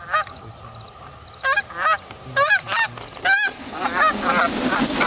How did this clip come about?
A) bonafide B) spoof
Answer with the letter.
A